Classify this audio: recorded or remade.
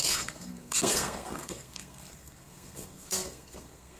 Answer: remade